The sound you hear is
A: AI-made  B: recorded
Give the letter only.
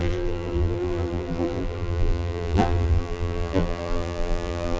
A